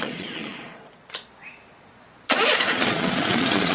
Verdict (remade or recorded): remade